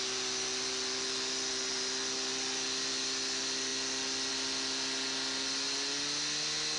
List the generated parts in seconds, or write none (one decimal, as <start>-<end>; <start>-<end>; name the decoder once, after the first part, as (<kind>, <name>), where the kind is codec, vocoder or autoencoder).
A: none